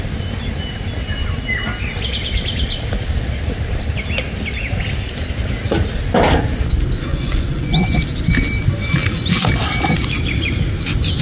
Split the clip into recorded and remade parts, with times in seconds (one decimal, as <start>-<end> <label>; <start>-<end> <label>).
0.0-7.1 recorded; 7.1-8.0 remade; 8.0-11.2 recorded